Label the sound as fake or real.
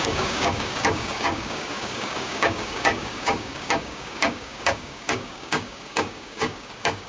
fake